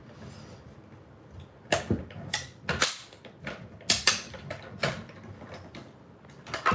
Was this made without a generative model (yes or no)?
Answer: yes